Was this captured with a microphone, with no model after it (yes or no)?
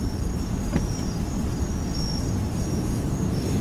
yes